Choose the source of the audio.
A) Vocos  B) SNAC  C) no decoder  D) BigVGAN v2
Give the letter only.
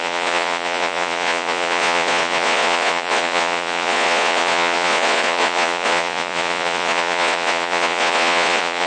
A